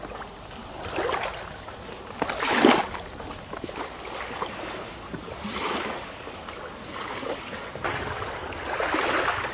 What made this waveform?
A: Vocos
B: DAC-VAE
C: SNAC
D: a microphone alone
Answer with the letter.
D